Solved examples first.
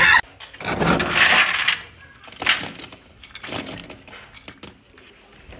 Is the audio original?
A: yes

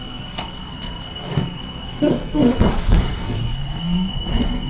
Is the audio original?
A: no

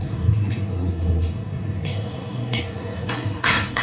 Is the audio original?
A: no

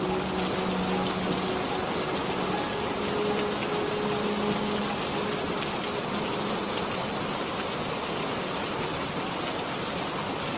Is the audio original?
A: yes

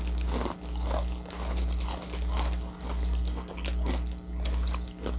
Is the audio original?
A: yes